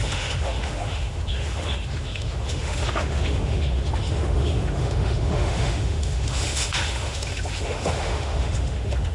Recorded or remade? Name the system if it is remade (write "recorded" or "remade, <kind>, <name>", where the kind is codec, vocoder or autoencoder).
remade, autoencoder, DAC-VAE